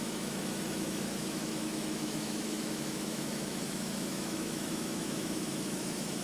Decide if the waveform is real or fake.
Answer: fake